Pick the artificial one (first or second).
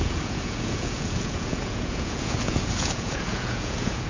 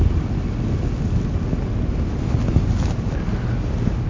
first